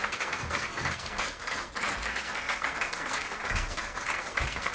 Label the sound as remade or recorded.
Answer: remade